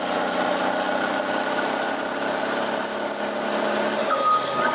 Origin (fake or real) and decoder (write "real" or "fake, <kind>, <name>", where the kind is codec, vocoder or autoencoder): real